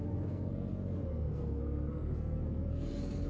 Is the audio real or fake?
fake